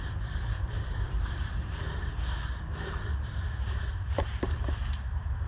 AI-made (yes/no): yes